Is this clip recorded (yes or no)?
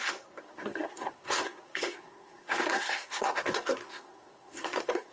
no